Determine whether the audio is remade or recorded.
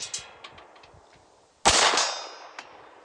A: recorded